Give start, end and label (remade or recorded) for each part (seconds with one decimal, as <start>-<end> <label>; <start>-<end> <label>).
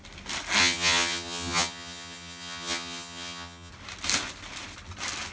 0.0-0.6 recorded; 0.6-3.7 remade; 3.7-5.3 recorded